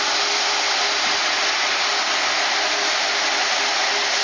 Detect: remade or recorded recorded